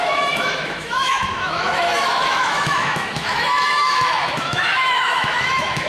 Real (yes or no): no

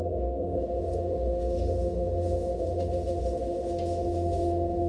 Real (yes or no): no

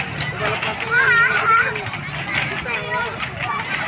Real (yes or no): yes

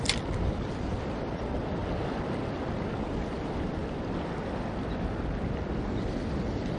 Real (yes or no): yes